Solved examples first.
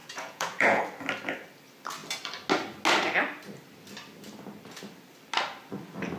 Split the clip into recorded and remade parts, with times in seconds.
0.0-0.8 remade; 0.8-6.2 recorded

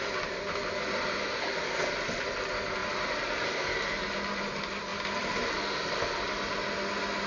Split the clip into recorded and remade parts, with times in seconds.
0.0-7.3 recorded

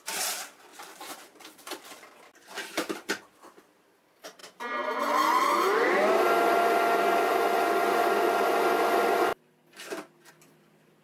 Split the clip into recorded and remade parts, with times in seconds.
0.0-0.7 recorded; 0.7-2.1 remade; 2.1-11.0 recorded